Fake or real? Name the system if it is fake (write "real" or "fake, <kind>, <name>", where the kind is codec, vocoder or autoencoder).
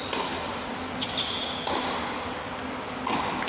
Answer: real